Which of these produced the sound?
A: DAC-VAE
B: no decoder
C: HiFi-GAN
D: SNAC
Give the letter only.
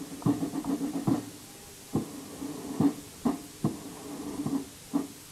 B